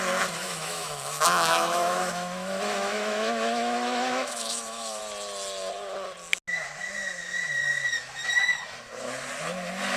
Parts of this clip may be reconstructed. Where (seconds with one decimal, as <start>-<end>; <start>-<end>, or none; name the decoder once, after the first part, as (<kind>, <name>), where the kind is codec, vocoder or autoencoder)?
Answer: 0.4-5.0 (autoencoder, DAC-VAE)